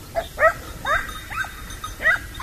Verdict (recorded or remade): recorded